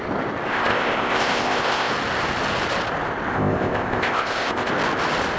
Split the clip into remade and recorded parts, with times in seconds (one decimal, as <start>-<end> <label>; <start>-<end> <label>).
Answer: 0.0-0.5 recorded; 0.5-1.9 remade; 1.9-3.3 recorded; 3.3-4.7 remade; 4.7-5.4 recorded